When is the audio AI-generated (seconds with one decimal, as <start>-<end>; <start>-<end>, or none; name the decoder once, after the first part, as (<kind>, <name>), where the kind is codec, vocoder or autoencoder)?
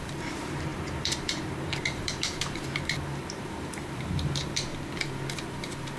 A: 0.0-4.7 (vocoder, BigVGAN v2)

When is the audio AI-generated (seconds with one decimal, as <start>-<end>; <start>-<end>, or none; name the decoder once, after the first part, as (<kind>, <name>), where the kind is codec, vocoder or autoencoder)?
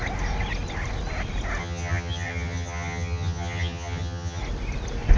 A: 1.6-4.4 (vocoder, HiFi-GAN)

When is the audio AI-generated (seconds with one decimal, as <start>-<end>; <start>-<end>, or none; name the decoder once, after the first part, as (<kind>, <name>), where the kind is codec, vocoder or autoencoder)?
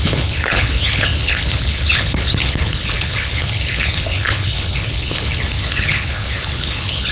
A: 0.0-7.1 (codec, HILCodec)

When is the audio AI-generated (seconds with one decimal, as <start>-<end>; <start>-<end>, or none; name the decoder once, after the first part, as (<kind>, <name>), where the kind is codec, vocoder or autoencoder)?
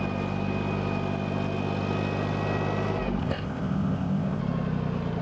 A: 3.2-4.4 (codec, ZipCodec)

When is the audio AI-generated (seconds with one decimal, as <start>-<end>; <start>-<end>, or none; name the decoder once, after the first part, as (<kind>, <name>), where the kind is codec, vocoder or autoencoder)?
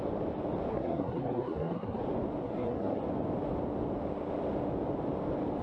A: 0.7-2.0 (codec, SNAC); 2.4-3.0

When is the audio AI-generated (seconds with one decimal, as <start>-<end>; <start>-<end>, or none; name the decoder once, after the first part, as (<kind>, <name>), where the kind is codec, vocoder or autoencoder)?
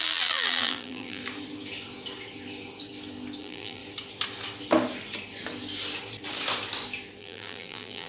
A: 0.0-1.2 (vocoder, BigVGAN v2); 3.4-3.8; 7.2-8.1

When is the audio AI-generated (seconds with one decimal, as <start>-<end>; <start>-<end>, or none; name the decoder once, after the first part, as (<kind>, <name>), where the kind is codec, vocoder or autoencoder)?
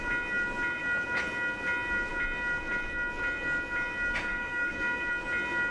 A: 4.3-5.1 (codec, DAC)